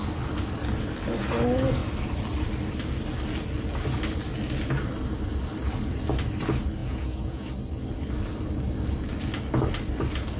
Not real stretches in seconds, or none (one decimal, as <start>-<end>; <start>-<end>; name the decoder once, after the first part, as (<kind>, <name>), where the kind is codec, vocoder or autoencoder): 6.8-7.5 (vocoder, Vocos)